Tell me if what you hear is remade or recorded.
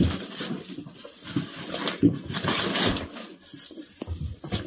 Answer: remade